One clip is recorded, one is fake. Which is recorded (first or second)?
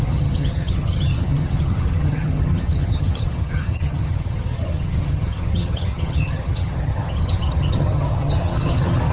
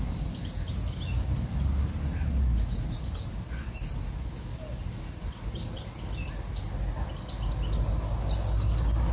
second